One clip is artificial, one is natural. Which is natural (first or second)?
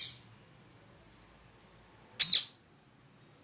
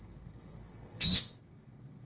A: first